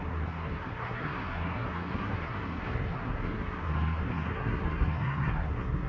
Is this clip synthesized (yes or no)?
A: yes